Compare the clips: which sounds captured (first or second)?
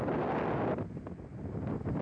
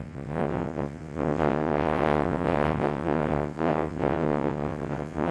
first